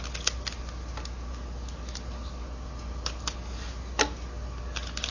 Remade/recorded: recorded